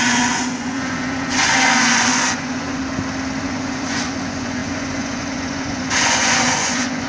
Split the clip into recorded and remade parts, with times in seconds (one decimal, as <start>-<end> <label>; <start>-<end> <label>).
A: 0.0-2.8 remade; 2.8-3.4 recorded; 3.4-7.1 remade